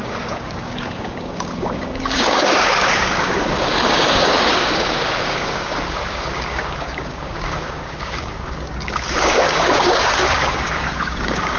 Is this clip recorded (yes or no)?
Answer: no